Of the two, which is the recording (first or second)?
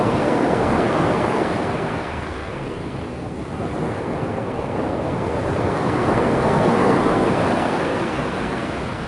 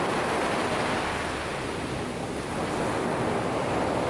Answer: second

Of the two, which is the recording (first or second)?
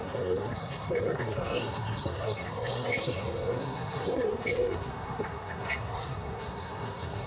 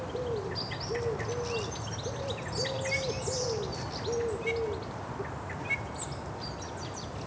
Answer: second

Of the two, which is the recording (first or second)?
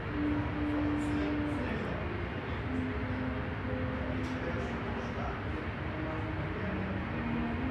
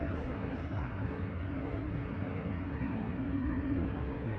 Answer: first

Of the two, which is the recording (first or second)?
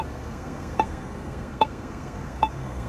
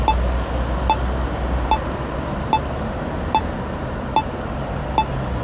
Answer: second